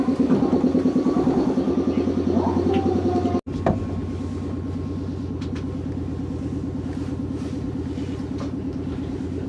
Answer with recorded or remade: recorded